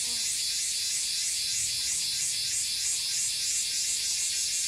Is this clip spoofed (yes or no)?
no